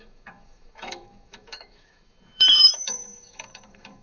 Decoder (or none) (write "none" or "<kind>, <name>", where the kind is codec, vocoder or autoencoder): autoencoder, DAC-VAE